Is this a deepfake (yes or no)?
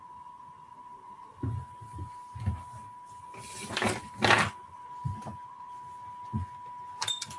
no